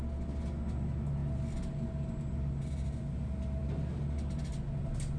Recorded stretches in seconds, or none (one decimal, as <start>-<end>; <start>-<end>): 0.0-5.2

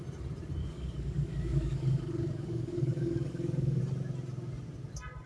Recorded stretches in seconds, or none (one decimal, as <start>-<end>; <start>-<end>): 0.0-0.6; 3.8-5.3